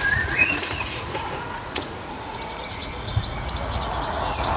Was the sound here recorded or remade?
remade